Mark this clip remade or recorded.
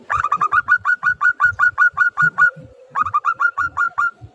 remade